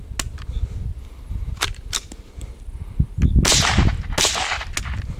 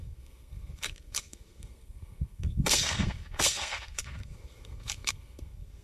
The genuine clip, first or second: first